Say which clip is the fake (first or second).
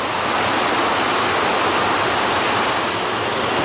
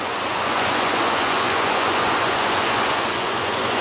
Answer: second